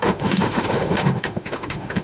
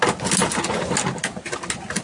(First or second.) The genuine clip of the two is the second